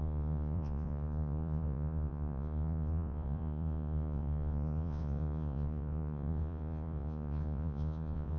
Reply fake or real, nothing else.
fake